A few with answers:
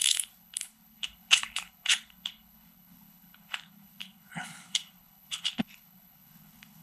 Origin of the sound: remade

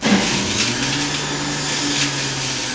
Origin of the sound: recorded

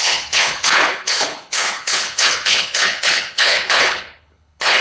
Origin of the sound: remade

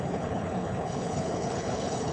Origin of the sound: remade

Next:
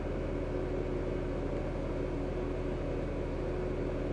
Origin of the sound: recorded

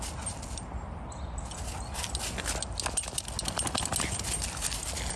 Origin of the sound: recorded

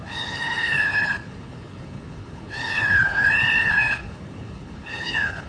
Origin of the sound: remade